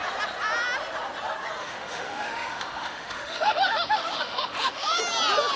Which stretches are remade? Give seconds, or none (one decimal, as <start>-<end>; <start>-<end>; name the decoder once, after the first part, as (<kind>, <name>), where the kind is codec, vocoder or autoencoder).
1.6-5.0 (autoencoder, DAC-VAE)